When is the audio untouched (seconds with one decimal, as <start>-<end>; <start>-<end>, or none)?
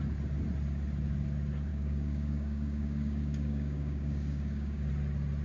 0.0-1.7; 4.9-5.4